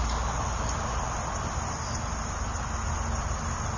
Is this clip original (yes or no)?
yes